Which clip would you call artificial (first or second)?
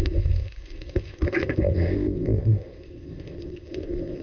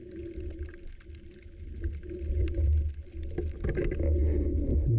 first